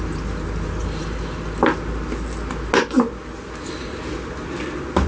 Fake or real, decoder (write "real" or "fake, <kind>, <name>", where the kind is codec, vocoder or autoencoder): real